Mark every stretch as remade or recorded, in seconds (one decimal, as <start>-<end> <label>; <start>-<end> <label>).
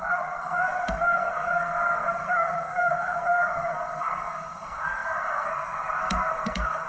0.0-6.9 remade